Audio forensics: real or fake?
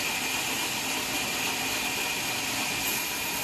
real